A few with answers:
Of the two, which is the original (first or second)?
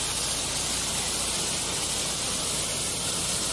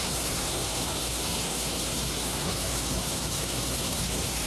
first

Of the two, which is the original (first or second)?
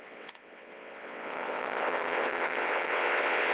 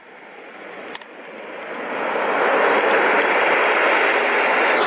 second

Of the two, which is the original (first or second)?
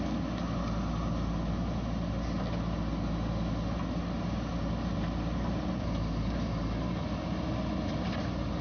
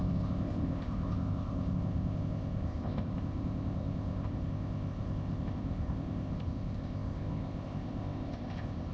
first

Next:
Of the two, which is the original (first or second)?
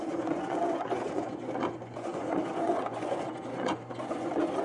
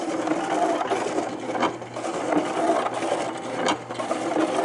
second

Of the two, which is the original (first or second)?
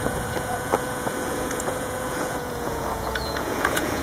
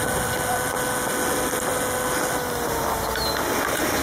second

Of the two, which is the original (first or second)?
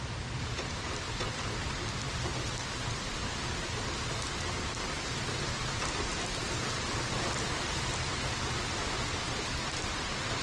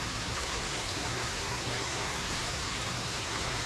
first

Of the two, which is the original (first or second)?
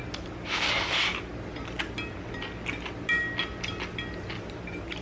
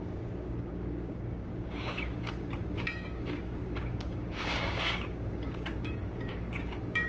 first